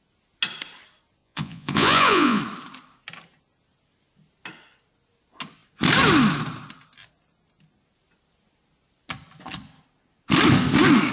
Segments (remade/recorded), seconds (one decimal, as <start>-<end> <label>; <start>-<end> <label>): 0.0-1.2 recorded; 1.2-2.4 remade; 2.4-11.1 recorded